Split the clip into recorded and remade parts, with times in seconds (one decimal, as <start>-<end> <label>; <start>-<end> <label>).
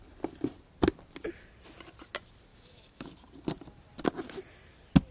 0.0-2.5 recorded; 2.5-3.1 remade; 3.1-5.1 recorded